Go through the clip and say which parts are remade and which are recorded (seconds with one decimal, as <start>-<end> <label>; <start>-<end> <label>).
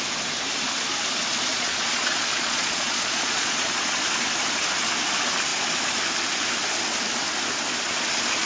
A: 0.0-1.5 recorded; 1.5-3.8 remade; 3.8-8.5 recorded